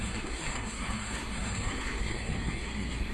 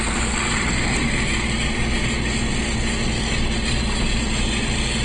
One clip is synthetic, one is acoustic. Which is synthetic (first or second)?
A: first